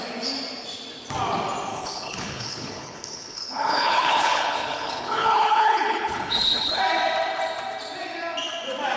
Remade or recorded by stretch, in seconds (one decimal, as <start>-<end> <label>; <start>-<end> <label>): 0.0-1.7 recorded; 1.7-6.8 remade; 6.8-9.0 recorded